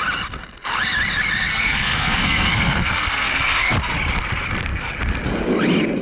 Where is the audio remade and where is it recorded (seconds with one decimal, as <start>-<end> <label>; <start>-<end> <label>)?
0.0-1.5 recorded; 1.5-3.7 remade; 3.7-6.0 recorded